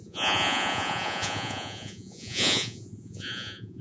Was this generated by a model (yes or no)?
yes